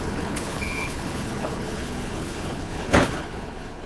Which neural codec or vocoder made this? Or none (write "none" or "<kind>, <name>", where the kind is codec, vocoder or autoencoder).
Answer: codec, HILCodec